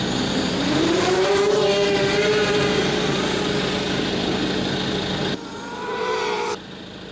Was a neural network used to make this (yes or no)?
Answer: no